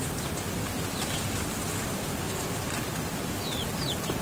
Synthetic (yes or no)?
no